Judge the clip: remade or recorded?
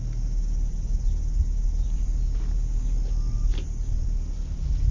recorded